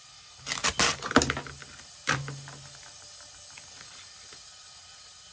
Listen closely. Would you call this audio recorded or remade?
recorded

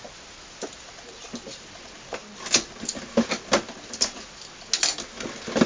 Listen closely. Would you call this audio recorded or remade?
recorded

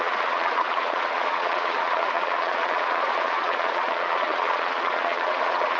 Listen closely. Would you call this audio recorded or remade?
remade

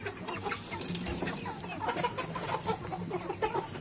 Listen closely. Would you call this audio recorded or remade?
remade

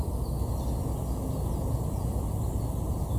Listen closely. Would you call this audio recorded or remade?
recorded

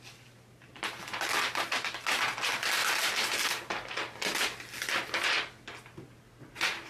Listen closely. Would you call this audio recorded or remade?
recorded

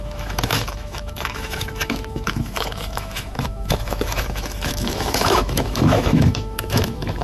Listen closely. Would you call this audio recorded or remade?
remade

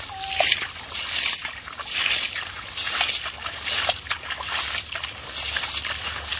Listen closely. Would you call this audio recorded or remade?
recorded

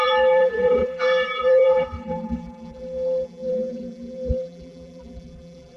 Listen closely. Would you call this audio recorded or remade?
remade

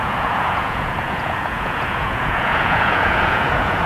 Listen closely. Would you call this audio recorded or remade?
remade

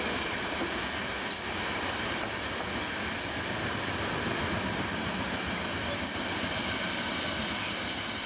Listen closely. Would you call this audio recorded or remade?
recorded